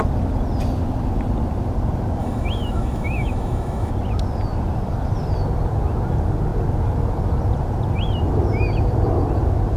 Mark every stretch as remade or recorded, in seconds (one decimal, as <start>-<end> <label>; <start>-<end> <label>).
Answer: 0.0-2.2 recorded; 2.2-3.9 remade; 3.9-9.8 recorded